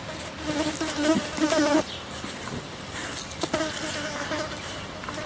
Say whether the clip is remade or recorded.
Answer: recorded